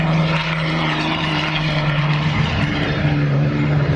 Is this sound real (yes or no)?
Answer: no